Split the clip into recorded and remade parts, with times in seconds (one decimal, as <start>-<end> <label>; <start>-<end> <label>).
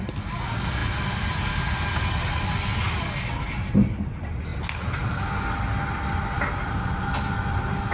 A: 0.0-7.9 recorded